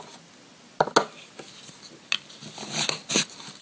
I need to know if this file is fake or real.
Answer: real